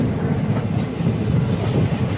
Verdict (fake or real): real